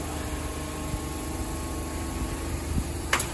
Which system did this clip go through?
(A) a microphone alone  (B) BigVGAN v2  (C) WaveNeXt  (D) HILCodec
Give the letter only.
A